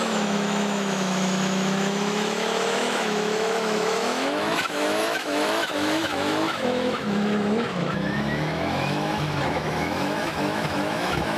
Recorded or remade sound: remade